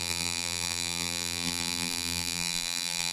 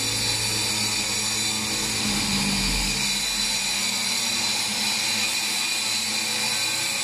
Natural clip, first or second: second